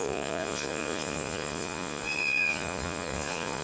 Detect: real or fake fake